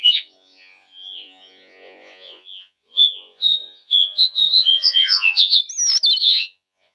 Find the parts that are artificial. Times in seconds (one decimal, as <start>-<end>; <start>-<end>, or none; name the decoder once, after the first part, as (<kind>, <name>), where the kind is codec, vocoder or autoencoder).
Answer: 0.0-5.6 (vocoder, Vocos); 6.2-6.9